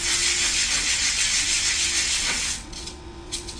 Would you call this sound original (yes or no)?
no